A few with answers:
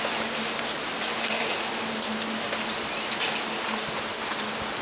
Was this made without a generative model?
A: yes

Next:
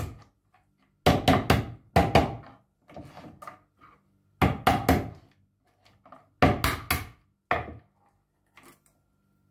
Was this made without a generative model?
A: yes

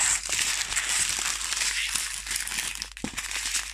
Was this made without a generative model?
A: yes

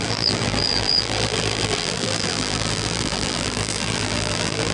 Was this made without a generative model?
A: no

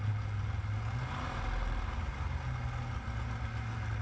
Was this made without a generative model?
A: yes